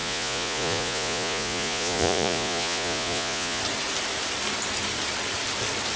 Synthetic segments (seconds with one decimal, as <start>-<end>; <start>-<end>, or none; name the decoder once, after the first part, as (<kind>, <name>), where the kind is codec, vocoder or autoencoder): 0.0-3.6 (vocoder, Vocos)